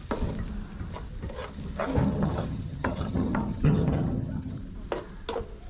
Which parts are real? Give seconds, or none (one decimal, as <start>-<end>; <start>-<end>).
0.0-2.1; 4.6-5.7